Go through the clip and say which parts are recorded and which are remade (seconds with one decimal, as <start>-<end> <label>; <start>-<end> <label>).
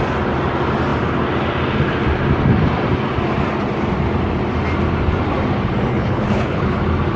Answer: 0.0-5.9 recorded; 5.9-6.8 remade; 6.8-7.2 recorded